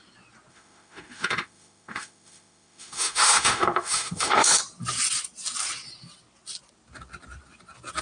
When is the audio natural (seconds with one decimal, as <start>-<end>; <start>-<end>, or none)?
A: 0.0-0.5; 4.6-8.0